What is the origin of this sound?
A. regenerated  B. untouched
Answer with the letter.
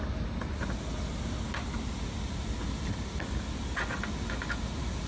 B